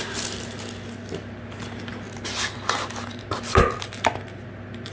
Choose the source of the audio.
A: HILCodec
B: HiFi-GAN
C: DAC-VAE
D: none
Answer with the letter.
D